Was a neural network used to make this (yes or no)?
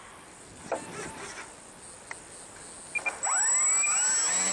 no